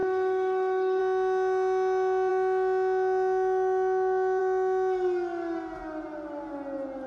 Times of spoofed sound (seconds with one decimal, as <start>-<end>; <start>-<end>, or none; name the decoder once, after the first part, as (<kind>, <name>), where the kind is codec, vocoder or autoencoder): 0.0-1.0 (codec, SNAC)